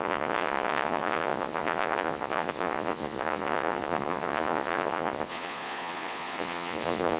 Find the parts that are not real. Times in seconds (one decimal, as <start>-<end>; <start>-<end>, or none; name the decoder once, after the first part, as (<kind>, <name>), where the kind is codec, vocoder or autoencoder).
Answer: 0.0-7.2 (vocoder, Vocos)